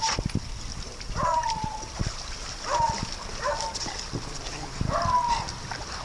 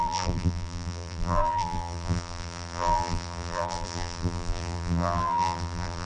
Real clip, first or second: first